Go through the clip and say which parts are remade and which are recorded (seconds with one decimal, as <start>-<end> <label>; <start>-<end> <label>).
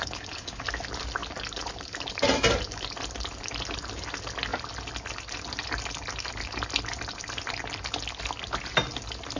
0.0-0.6 remade; 0.6-9.4 recorded